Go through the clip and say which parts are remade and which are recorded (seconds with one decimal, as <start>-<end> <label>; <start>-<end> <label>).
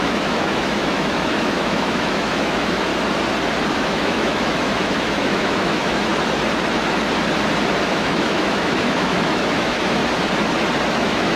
0.0-2.9 remade; 2.9-3.7 recorded; 3.7-6.1 remade; 6.1-7.9 recorded; 7.9-10.0 remade; 10.0-10.9 recorded; 10.9-11.4 remade